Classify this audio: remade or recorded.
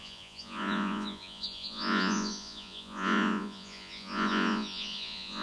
remade